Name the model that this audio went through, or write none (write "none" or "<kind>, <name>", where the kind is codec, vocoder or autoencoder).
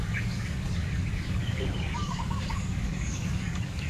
codec, DAC